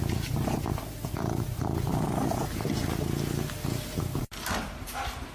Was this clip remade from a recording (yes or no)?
no